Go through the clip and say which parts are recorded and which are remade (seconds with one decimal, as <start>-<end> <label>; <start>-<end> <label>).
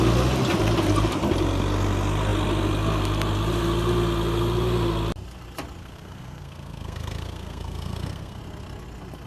0.0-5.8 recorded; 5.8-8.4 remade; 8.4-9.3 recorded